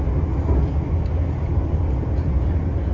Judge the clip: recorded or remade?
recorded